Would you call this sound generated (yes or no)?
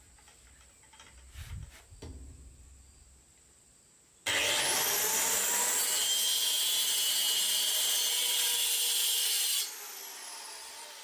no